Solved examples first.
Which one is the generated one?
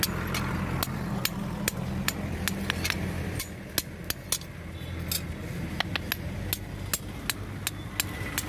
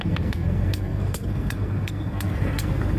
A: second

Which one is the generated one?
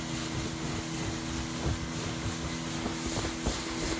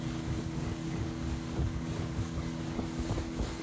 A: second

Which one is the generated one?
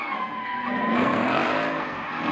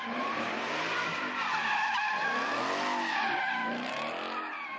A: first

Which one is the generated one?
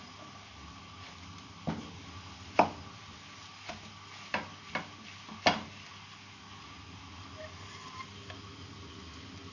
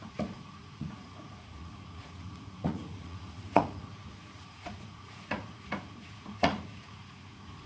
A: second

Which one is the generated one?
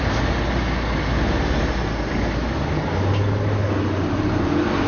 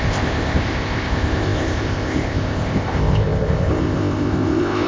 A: second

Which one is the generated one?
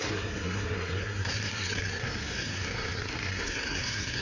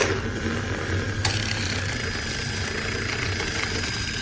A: first